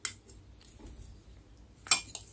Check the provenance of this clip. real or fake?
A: real